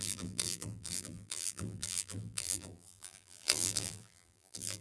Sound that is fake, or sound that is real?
fake